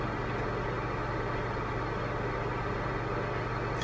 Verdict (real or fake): real